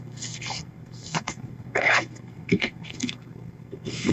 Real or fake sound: fake